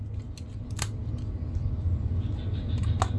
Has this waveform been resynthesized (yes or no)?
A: no